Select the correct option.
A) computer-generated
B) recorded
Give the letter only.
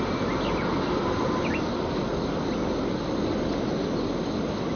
B